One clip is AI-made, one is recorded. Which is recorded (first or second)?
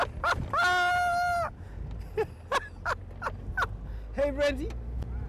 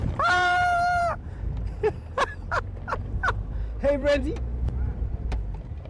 first